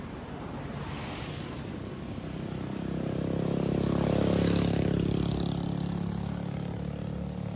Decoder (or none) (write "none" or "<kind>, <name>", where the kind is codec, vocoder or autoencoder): none